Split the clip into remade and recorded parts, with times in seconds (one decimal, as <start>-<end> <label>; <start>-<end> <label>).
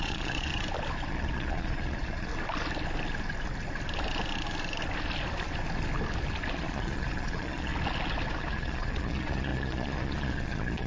0.0-0.5 remade; 0.5-1.1 recorded; 1.1-2.3 remade; 2.3-6.5 recorded; 6.5-7.7 remade; 7.7-8.4 recorded; 8.4-10.9 remade